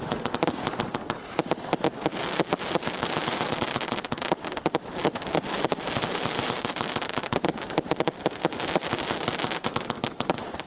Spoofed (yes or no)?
no